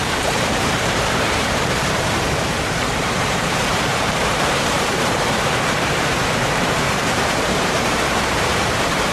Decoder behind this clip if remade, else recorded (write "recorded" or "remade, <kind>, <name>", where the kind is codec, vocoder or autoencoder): remade, vocoder, BigVGAN v2